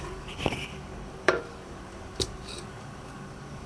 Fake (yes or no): yes